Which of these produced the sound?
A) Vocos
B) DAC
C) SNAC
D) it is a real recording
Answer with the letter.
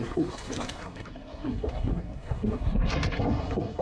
C